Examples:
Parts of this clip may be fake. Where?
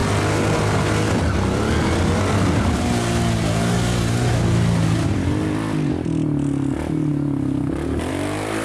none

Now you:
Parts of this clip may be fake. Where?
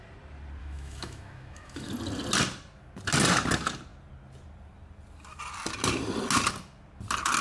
0.6-1.9 (autoencoder, DAC-VAE)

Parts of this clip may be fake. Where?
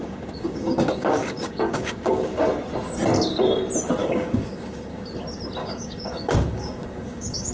0.0-2.4 (codec, DAC); 4.0-5.0; 5.6-7.5